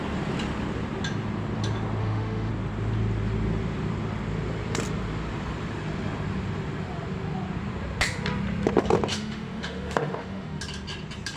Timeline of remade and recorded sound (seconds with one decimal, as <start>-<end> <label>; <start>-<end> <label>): 0.0-2.0 recorded; 2.0-2.5 remade; 2.5-9.1 recorded; 9.1-10.6 remade; 10.6-11.4 recorded